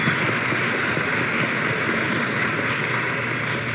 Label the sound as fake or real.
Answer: real